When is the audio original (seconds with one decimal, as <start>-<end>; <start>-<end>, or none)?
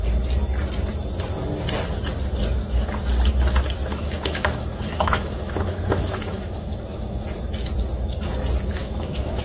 0.0-3.8; 7.4-8.8